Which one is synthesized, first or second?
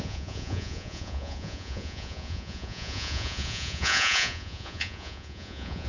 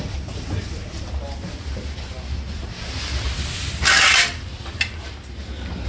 first